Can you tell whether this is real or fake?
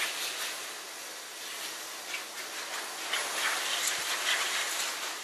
real